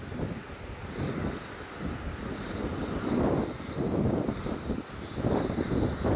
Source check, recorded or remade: recorded